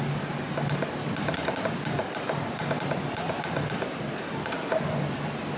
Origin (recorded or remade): recorded